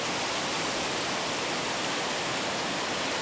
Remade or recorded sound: recorded